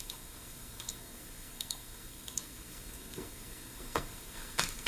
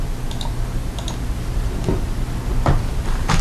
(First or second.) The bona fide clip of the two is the second